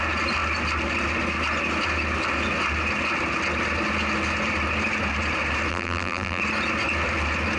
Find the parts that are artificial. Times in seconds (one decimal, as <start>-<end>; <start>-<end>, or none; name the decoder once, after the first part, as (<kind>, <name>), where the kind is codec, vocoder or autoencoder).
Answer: 5.7-6.4 (vocoder, BigVGAN v2)